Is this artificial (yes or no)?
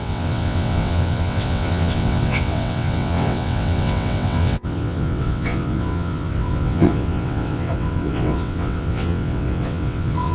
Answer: yes